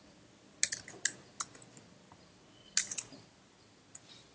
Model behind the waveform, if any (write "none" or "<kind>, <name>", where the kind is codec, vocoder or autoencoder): none